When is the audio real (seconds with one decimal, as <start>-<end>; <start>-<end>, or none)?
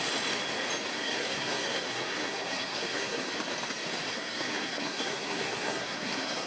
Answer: 0.0-0.9; 3.3-4.1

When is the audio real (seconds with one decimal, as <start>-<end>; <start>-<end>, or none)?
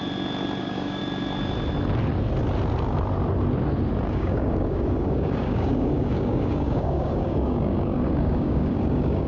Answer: 0.0-0.6; 1.0-4.1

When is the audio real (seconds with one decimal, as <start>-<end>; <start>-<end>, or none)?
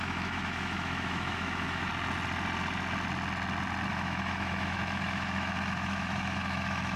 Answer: 1.9-3.9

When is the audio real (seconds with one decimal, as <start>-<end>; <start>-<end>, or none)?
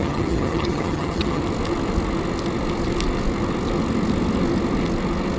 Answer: 1.4-5.4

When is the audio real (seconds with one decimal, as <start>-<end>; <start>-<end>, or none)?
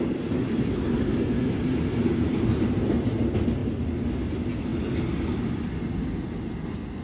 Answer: 0.0-7.0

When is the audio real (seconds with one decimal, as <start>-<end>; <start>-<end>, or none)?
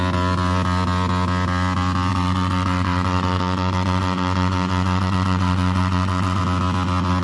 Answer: 0.0-2.1; 6.4-7.2